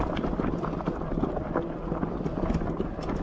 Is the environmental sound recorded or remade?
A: recorded